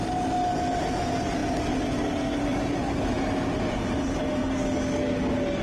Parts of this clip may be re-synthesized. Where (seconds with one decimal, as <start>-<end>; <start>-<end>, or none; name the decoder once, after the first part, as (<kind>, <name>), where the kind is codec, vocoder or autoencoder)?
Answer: none